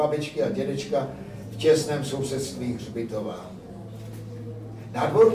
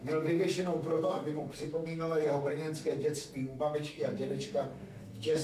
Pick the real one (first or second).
first